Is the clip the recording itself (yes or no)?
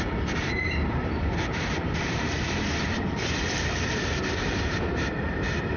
no